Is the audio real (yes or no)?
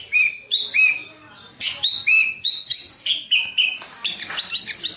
yes